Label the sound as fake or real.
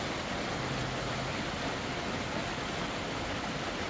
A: real